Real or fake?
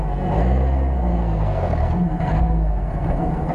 fake